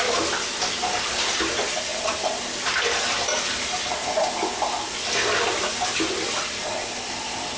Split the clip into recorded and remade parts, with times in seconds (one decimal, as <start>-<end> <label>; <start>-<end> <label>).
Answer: 0.0-7.6 recorded